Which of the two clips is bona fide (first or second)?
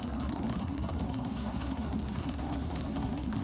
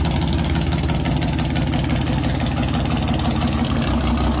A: second